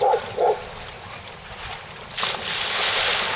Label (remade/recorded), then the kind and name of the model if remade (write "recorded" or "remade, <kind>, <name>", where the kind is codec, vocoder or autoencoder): remade, vocoder, BigVGAN v2